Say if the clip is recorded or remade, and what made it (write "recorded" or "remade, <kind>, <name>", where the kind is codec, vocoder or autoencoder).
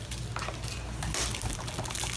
recorded